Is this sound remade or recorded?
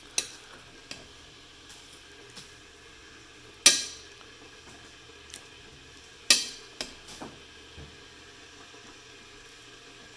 recorded